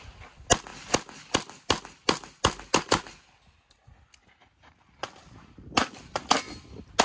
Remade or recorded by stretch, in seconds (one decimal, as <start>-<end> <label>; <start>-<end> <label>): 0.0-7.0 recorded